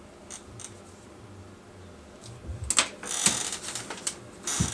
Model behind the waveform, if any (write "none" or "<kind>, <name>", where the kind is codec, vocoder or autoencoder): none